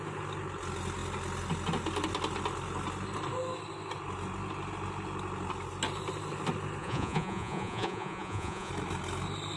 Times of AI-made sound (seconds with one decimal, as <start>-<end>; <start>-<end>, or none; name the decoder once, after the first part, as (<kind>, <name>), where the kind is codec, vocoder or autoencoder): 6.8-8.7 (vocoder, Vocos)